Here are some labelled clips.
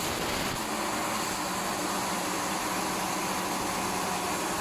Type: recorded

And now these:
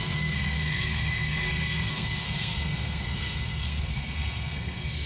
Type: remade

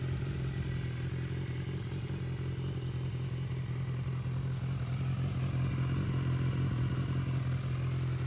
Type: recorded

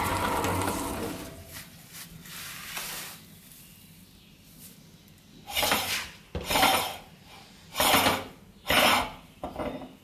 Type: recorded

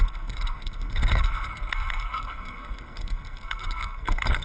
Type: remade